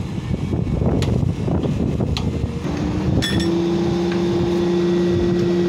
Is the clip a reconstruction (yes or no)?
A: no